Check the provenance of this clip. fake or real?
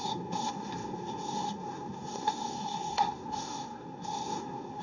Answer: fake